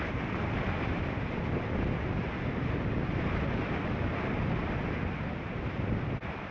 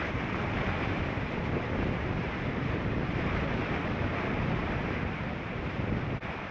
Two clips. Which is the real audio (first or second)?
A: first